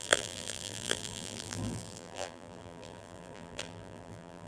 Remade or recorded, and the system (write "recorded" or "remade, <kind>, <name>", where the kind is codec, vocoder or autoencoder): remade, vocoder, BigVGAN v2